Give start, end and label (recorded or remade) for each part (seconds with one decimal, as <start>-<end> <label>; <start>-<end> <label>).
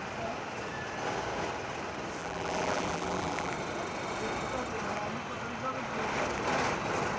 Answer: 0.0-2.2 recorded; 2.2-3.5 remade; 3.5-7.2 recorded